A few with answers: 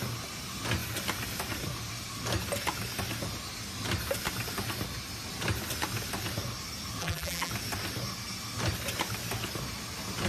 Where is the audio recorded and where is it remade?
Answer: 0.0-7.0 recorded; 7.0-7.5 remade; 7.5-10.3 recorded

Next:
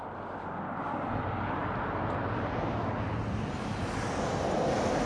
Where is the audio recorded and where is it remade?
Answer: 0.0-5.1 recorded

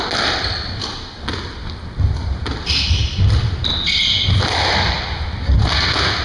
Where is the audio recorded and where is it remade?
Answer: 0.0-6.2 recorded

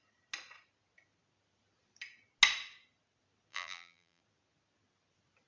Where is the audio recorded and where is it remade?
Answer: 0.0-3.5 recorded; 3.5-4.2 remade; 4.2-5.5 recorded